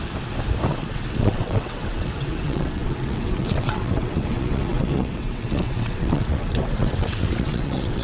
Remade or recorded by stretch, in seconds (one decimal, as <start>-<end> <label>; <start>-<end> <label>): 0.0-0.7 recorded; 0.7-8.0 remade